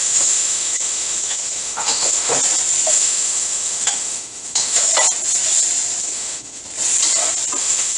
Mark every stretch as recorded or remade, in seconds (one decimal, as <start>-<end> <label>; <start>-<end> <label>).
0.0-2.3 remade; 2.3-2.9 recorded; 2.9-4.9 remade; 4.9-6.0 recorded; 6.0-6.6 remade; 6.6-7.6 recorded; 7.6-8.0 remade